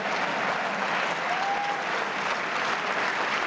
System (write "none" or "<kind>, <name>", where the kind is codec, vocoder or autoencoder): none